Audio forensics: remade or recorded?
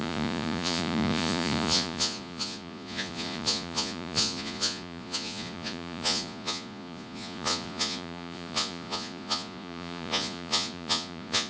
remade